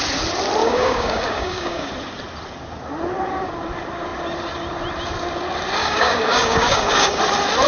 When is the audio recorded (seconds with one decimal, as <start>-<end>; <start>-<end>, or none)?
0.0-0.6; 1.9-5.8; 7.2-7.7